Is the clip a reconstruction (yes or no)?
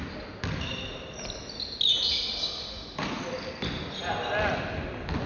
no